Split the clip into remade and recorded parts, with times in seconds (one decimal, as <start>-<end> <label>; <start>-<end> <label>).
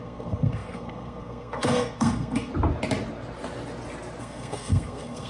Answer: 0.0-2.5 remade; 2.5-4.2 recorded; 4.2-5.3 remade